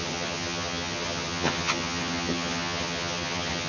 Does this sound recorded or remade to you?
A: remade